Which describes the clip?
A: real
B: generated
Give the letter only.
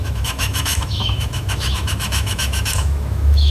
B